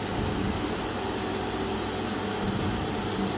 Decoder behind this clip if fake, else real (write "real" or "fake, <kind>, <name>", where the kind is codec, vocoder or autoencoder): real